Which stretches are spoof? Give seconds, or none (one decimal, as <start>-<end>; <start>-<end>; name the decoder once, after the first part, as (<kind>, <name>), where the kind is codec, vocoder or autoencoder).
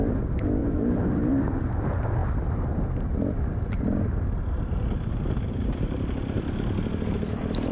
none